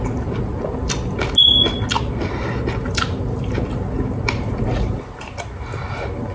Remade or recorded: recorded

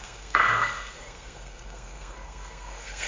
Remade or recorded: remade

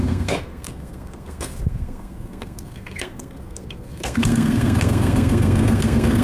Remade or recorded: remade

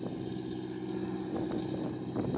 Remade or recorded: recorded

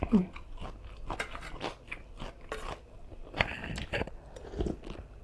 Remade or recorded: recorded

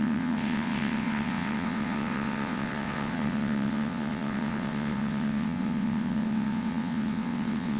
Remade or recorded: remade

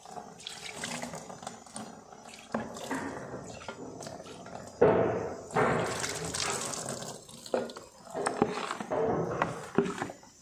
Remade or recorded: recorded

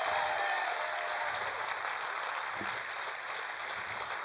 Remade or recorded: recorded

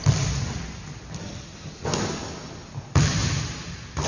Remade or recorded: recorded